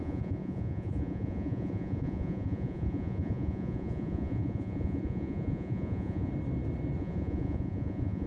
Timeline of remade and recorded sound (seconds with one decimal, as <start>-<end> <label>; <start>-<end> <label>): 0.0-6.3 remade; 6.3-7.0 recorded; 7.0-8.3 remade